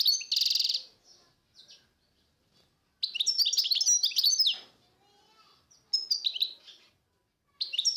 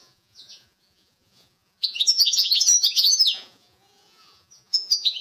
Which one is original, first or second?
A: first